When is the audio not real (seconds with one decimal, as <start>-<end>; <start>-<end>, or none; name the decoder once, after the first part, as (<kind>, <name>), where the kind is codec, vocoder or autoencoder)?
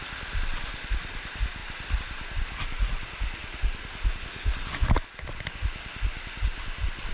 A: none